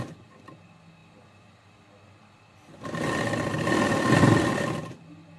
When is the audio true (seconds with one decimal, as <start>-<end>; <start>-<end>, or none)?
0.0-5.4